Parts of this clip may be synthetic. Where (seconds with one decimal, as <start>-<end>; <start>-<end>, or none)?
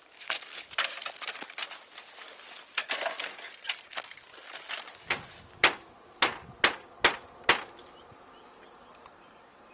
none